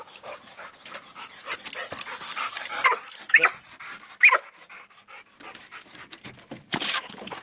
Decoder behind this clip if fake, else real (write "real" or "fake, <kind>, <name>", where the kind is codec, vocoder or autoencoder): real